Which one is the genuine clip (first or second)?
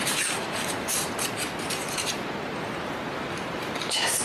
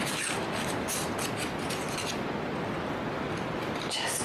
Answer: second